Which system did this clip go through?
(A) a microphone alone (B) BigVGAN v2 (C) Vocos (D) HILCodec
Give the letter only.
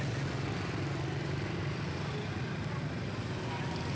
A